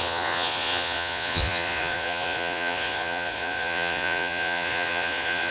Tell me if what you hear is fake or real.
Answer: fake